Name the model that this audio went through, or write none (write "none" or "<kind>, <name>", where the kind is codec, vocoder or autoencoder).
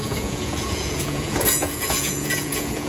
vocoder, Vocos